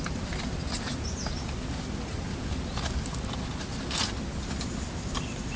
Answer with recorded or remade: recorded